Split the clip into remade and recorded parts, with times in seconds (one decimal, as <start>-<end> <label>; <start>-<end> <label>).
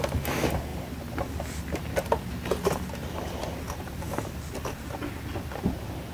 0.0-0.7 recorded; 0.7-1.6 remade; 1.6-3.0 recorded; 3.0-5.0 remade; 5.0-6.1 recorded